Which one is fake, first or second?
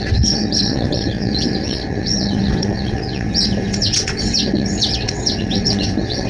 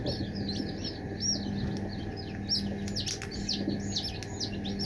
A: first